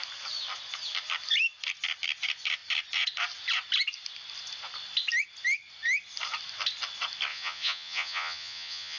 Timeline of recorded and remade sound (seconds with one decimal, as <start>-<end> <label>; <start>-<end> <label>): 0.0-7.3 recorded; 7.3-9.0 remade